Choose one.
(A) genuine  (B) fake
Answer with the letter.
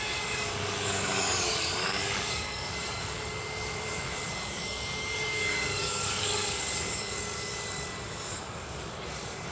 B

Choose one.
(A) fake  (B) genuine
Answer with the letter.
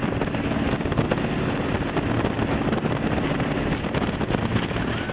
B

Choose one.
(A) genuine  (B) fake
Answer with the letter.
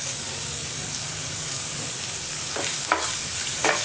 B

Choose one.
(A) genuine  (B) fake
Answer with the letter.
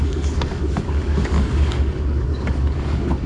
B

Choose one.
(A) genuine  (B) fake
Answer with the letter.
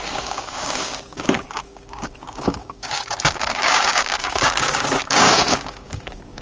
B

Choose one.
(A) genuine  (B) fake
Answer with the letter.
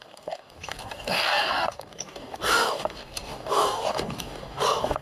B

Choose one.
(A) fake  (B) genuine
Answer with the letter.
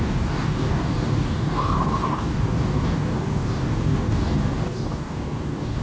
A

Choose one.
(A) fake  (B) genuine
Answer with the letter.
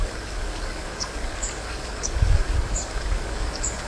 A